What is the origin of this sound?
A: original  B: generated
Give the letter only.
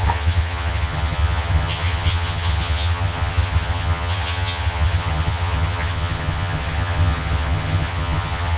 B